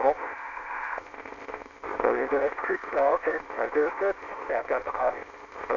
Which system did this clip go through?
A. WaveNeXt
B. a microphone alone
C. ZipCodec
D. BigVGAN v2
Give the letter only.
C